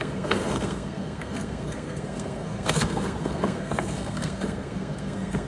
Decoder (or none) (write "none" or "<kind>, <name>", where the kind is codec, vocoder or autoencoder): codec, SNAC